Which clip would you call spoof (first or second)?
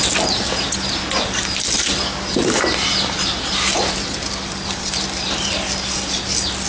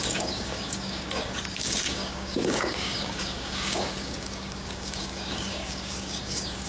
second